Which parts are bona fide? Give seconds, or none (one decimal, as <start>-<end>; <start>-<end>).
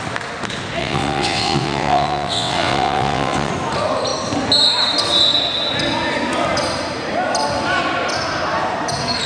0.0-0.8; 3.5-9.3